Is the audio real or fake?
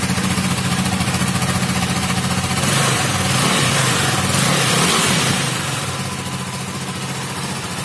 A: real